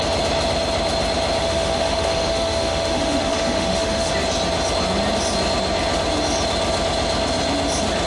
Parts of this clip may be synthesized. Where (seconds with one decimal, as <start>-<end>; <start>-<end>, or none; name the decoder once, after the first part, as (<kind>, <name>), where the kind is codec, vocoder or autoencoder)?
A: 1.4-4.1 (autoencoder, DAC-VAE)